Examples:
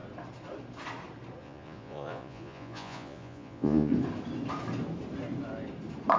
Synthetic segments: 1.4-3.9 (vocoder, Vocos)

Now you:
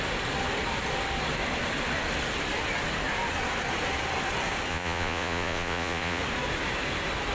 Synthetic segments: 4.7-6.2 (vocoder, Vocos)